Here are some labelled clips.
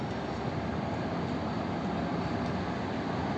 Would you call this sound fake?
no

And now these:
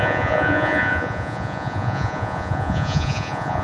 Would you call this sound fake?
yes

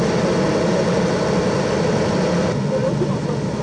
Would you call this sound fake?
no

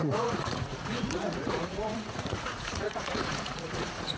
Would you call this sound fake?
yes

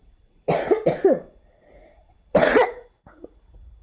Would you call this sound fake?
yes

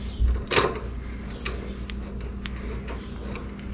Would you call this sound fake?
no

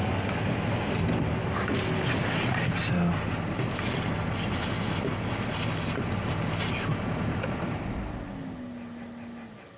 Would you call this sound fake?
no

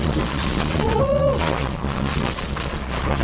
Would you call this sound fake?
yes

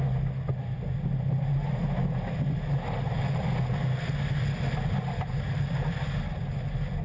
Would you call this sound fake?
no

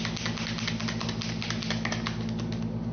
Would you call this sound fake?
no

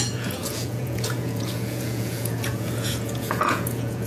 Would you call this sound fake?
yes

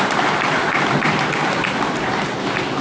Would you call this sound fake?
no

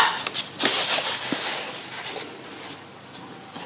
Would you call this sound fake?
no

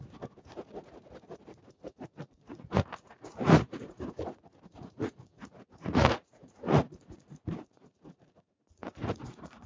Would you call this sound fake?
yes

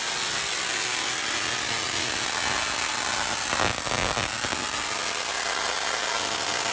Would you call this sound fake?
no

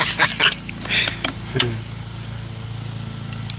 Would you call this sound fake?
no